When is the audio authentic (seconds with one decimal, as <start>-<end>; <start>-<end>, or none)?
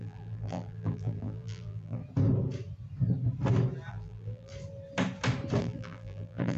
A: 2.0-3.9; 4.5-5.6